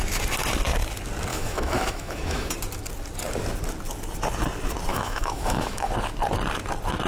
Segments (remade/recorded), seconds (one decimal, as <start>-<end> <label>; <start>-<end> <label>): 0.0-1.3 recorded; 1.3-2.5 remade; 2.5-4.9 recorded; 4.9-5.9 remade; 5.9-7.1 recorded